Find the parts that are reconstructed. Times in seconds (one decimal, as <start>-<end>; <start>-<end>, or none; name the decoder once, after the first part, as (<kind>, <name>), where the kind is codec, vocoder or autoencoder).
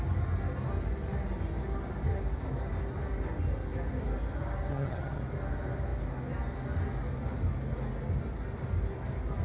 4.7-5.2 (vocoder, HiFi-GAN)